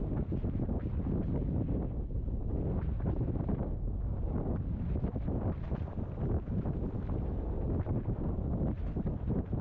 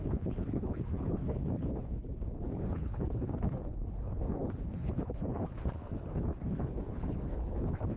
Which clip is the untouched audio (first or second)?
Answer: first